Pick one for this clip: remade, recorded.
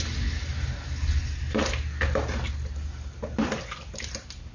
recorded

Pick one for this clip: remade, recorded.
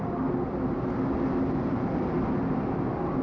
recorded